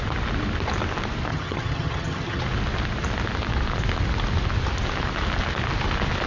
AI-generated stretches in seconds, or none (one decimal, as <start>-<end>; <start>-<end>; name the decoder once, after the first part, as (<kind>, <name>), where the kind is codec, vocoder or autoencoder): 1.3-2.4 (vocoder, HiFi-GAN)